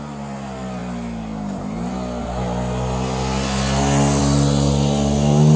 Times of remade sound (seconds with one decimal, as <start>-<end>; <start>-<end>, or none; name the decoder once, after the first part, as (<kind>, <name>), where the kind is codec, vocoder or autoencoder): none